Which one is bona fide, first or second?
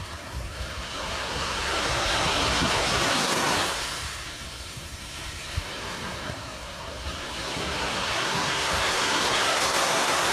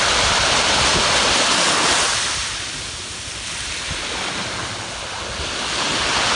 second